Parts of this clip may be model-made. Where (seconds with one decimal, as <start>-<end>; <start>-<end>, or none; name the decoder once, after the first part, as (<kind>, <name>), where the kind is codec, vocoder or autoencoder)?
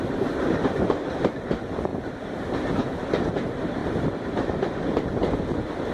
0.0-3.8 (vocoder, BigVGAN v2)